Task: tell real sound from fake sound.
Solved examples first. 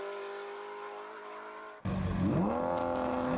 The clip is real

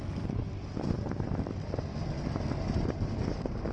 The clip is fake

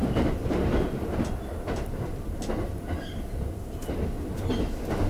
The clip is real